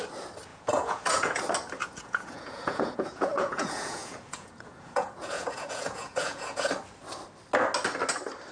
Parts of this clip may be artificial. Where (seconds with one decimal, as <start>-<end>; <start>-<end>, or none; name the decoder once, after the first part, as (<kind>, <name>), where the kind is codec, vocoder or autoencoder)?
0.5-1.4 (vocoder, Vocos); 1.8-6.7